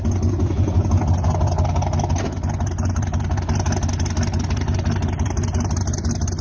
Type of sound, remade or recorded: recorded